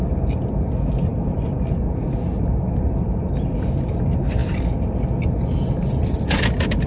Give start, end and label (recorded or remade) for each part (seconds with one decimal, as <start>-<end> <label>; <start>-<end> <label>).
0.0-6.9 recorded